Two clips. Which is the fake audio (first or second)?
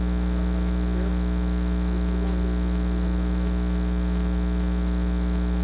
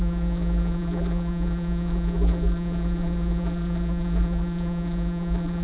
second